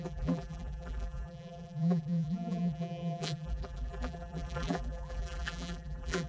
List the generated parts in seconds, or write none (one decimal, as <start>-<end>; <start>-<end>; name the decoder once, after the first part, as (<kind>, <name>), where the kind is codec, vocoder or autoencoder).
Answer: 0.0-6.3 (vocoder, BigVGAN v2)